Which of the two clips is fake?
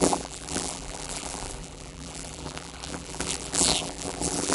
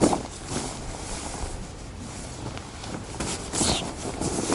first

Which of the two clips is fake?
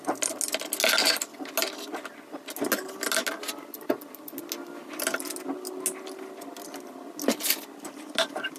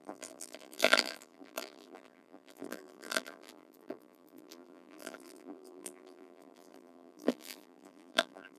second